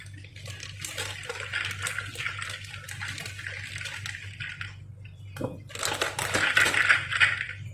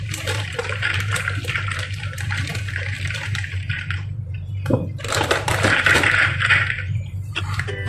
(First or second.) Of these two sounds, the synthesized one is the second